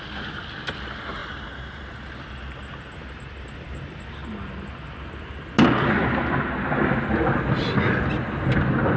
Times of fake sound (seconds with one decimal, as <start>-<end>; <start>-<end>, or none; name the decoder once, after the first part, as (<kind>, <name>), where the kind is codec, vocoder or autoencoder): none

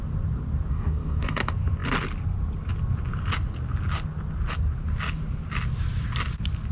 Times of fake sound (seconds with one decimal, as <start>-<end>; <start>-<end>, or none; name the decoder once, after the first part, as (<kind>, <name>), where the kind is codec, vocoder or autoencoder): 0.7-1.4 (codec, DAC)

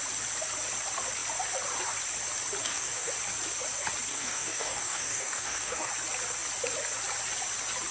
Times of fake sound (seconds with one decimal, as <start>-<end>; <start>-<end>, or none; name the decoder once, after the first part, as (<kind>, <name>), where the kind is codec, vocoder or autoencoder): 2.6-3.1 (codec, DAC); 4.1-5.9

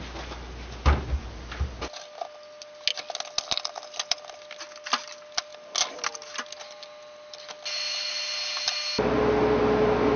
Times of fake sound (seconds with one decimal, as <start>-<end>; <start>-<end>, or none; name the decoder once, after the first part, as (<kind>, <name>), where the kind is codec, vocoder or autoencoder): none

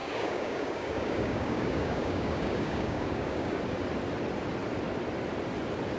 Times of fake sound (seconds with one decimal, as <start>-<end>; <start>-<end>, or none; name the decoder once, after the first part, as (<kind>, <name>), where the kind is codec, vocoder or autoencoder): 0.0-3.6 (codec, DAC)

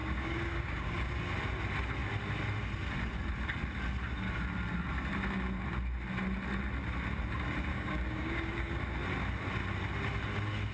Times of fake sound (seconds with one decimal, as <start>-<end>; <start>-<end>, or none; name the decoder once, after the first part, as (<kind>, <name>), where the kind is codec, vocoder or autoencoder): 0.0-1.2 (codec, DAC); 7.7-8.8

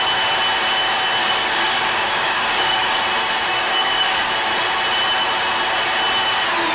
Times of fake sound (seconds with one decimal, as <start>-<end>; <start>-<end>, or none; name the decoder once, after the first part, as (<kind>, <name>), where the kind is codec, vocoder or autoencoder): 1.2-3.0 (codec, DAC); 3.5-4.3